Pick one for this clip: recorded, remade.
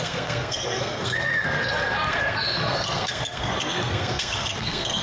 remade